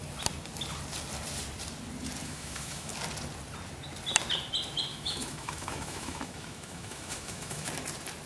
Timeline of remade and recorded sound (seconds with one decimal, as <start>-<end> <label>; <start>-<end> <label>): 0.0-2.2 recorded; 2.2-2.9 remade; 2.9-4.9 recorded; 4.9-7.7 remade; 7.7-8.3 recorded